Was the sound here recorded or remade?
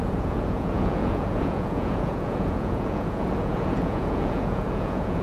remade